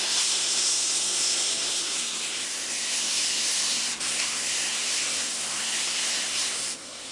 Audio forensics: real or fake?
fake